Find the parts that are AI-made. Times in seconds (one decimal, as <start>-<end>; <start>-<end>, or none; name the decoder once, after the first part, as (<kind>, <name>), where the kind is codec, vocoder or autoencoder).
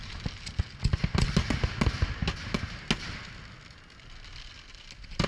0.0-0.6 (vocoder, BigVGAN v2)